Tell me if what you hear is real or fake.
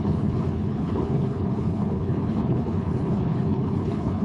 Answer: fake